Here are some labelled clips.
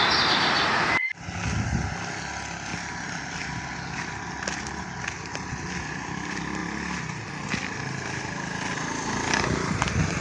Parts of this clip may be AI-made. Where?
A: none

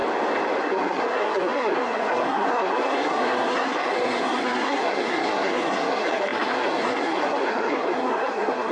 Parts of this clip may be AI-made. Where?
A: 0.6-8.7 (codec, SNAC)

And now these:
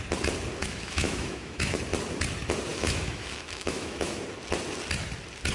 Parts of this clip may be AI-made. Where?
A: 0.6-1.8 (autoencoder, DAC-VAE); 2.7-4.2

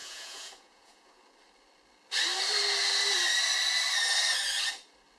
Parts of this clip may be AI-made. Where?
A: 0.0-1.1 (vocoder, Vocos)

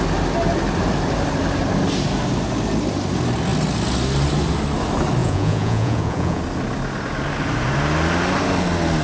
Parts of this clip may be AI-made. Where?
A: 5.2-6.4 (vocoder, Vocos)

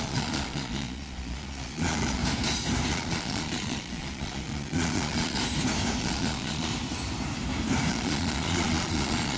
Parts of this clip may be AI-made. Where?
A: 0.0-2.2 (vocoder, Vocos); 2.9-5.4; 6.0-6.7; 7.9-9.4

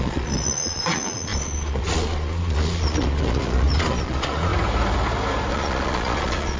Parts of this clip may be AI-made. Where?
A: 0.0-4.5 (vocoder, Vocos); 5.5-6.6

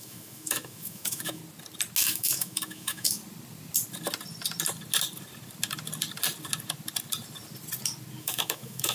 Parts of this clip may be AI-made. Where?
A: 0.0-1.4 (autoencoder, DAC-VAE); 2.0-3.2; 8.2-8.9